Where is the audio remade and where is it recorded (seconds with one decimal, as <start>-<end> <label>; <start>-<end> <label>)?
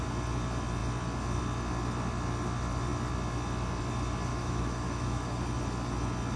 0.0-4.3 recorded; 4.3-5.4 remade; 5.4-6.4 recorded